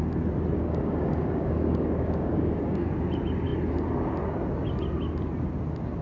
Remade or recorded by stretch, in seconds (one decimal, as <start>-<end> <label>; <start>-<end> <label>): 0.0-0.6 recorded; 0.6-2.9 remade; 2.9-6.0 recorded